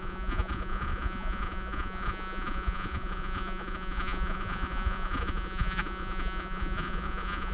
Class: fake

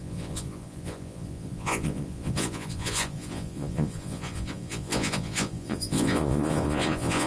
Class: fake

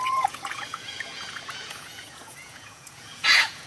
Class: fake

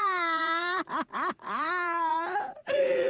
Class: fake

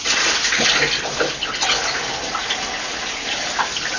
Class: real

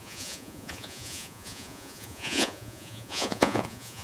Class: fake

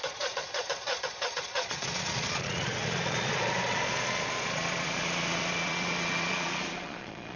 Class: fake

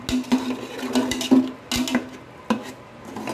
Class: real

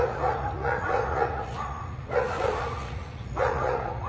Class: fake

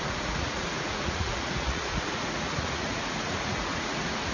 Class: fake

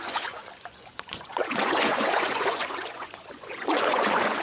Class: fake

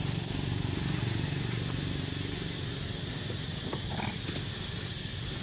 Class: real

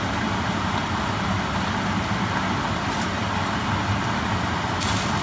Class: real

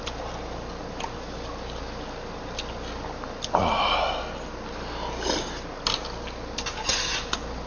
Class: real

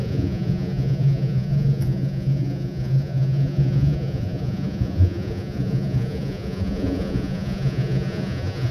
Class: fake